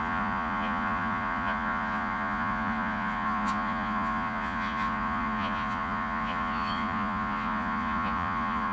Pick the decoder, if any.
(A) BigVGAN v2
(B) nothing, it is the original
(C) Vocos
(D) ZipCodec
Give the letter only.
C